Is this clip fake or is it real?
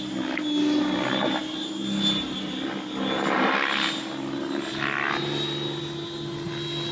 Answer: real